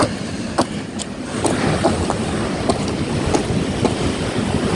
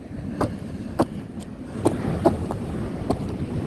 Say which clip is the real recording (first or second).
first